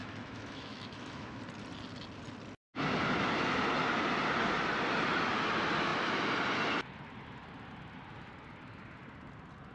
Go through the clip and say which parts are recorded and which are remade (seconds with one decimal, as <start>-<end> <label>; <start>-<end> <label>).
0.0-1.4 remade; 1.4-9.7 recorded